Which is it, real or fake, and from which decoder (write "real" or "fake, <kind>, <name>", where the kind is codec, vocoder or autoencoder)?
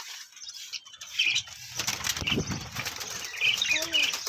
real